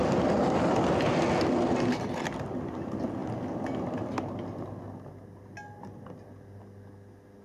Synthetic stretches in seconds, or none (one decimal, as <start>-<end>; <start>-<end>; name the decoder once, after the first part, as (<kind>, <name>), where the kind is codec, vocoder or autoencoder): none